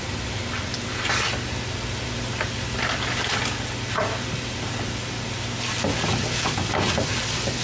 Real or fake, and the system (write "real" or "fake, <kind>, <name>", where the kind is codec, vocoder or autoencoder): real